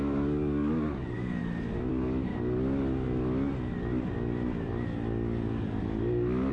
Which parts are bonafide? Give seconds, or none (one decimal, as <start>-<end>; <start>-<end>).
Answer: 1.4-1.9; 2.3-6.5